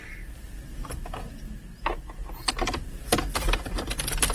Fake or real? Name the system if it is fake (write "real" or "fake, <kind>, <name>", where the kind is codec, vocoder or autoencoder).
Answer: real